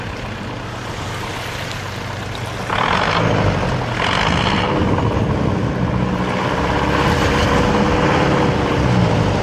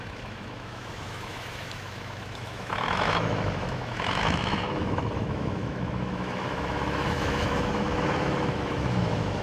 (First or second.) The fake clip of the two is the second